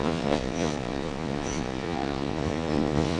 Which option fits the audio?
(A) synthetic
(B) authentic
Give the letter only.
A